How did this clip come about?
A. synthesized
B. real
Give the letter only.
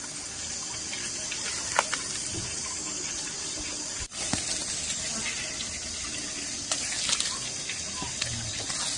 B